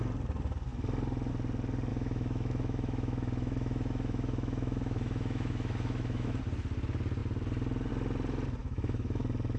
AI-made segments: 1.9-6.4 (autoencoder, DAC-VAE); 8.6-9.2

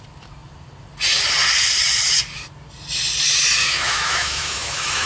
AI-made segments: 3.6-5.1 (autoencoder, DAC-VAE)